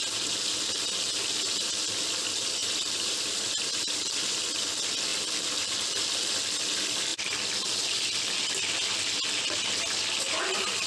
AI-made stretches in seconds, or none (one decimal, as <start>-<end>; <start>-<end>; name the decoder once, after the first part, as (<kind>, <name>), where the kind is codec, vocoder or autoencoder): 2.6-4.0 (vocoder, BigVGAN v2); 5.1-6.2